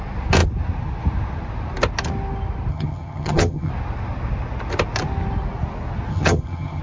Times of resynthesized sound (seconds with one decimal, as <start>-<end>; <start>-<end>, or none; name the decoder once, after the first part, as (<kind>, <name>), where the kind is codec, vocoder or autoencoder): 2.7-3.7 (vocoder, HiFi-GAN); 6.1-6.8